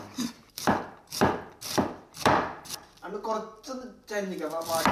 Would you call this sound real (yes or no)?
yes